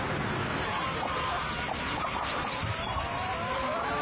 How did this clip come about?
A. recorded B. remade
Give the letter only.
A